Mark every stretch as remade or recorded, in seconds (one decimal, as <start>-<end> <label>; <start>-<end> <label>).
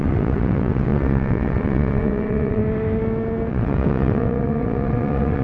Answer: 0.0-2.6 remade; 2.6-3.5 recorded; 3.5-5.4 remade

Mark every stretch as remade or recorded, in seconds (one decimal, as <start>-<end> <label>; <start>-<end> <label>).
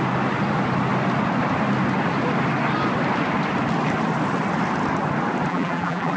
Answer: 0.0-5.5 recorded; 5.5-6.2 remade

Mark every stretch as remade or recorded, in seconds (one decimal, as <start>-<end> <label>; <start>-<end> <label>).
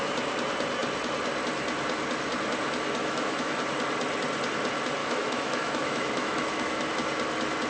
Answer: 0.0-3.0 recorded; 3.0-3.6 remade; 3.6-5.0 recorded; 5.0-6.9 remade; 6.9-7.7 recorded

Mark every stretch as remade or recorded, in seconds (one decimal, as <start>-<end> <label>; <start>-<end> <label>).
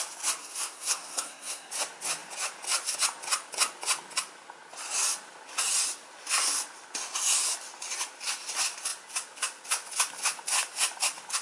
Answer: 0.0-0.4 recorded; 0.4-1.7 remade; 1.7-11.4 recorded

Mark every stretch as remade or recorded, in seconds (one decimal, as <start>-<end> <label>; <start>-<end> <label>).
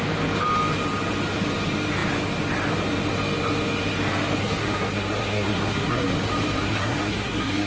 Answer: 0.0-4.4 recorded; 4.4-6.1 remade; 6.1-6.6 recorded; 6.6-7.7 remade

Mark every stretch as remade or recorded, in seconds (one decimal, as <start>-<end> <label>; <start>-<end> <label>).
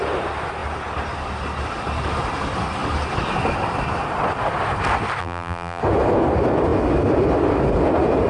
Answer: 0.0-5.2 recorded; 5.2-5.8 remade; 5.8-8.3 recorded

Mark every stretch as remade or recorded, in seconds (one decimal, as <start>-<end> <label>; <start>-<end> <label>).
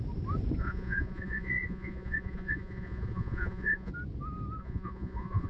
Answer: 0.0-0.6 recorded; 0.6-3.9 remade; 3.9-4.6 recorded; 4.6-5.5 remade